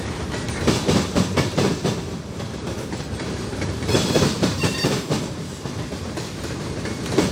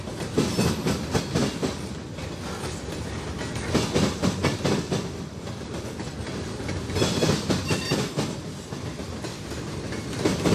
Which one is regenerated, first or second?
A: first